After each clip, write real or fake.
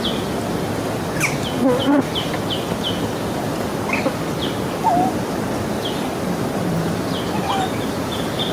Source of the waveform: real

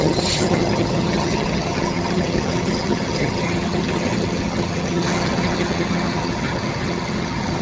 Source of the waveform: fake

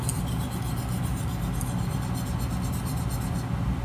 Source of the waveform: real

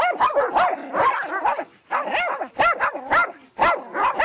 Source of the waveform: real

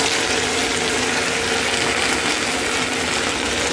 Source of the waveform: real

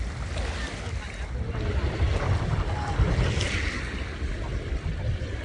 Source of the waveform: real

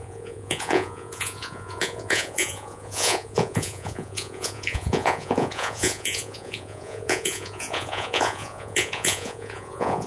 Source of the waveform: fake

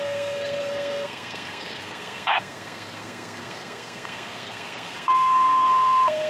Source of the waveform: fake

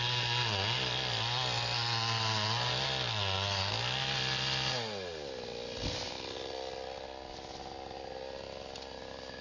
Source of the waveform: real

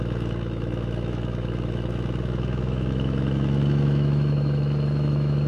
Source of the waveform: fake